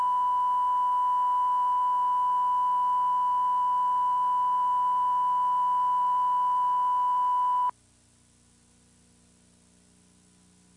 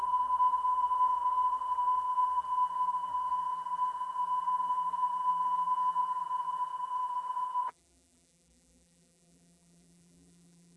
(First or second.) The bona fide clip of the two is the first